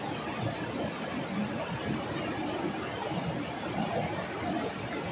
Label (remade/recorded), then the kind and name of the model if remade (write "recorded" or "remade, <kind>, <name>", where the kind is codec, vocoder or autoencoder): recorded